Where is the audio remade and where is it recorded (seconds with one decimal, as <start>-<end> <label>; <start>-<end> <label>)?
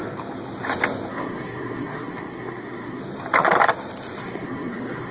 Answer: 0.0-1.1 recorded; 1.1-3.0 remade; 3.0-4.2 recorded; 4.2-5.1 remade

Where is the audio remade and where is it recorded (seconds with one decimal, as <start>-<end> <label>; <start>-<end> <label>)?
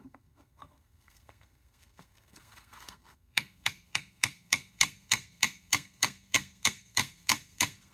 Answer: 0.0-7.9 remade